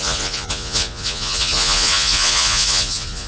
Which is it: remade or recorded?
remade